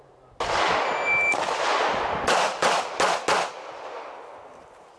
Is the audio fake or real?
real